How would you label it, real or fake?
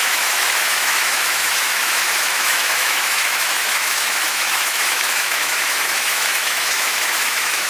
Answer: fake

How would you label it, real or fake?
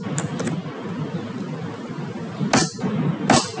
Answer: real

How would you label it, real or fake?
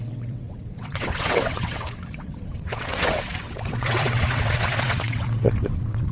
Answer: fake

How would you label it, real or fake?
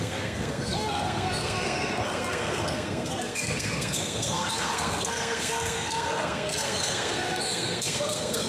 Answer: fake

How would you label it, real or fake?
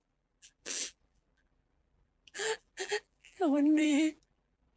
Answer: fake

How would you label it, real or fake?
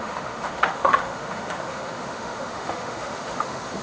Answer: fake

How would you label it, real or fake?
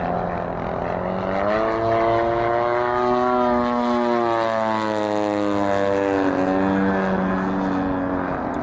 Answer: real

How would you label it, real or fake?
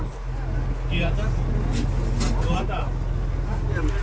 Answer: real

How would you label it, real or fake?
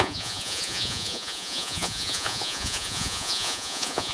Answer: fake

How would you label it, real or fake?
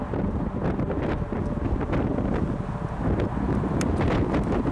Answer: real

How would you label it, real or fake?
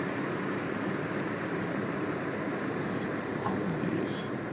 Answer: real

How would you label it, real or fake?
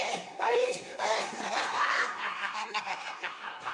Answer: fake